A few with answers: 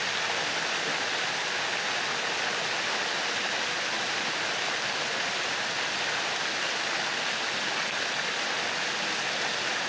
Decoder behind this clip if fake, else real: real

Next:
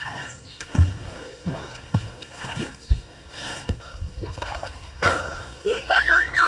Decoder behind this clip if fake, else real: fake, codec, SNAC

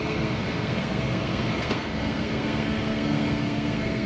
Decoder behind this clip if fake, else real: fake, codec, SNAC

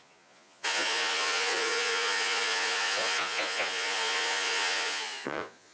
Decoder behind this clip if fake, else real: fake, vocoder, Vocos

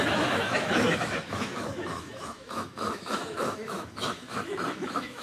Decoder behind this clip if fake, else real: fake, autoencoder, DAC-VAE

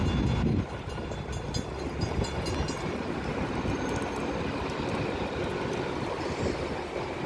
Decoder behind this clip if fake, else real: real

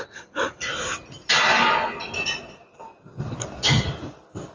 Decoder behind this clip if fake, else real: real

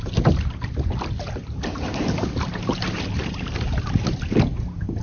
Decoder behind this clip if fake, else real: real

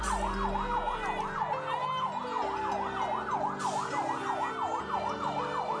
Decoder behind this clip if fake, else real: real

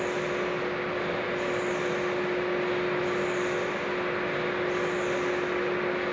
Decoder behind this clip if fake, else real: real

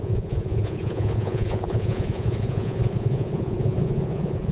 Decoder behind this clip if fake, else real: fake, vocoder, Vocos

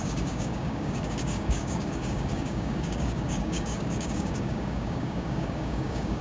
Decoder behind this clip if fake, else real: fake, codec, DAC